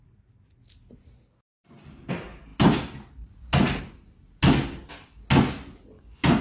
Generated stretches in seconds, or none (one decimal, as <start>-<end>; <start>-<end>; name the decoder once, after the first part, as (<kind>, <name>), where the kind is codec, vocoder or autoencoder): none